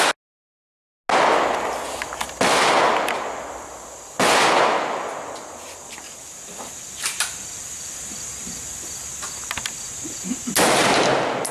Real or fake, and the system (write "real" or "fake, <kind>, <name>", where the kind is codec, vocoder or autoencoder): real